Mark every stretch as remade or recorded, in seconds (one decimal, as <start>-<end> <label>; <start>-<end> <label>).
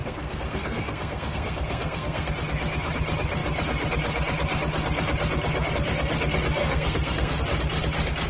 0.0-2.3 remade; 2.3-6.6 recorded; 6.6-7.4 remade; 7.4-8.3 recorded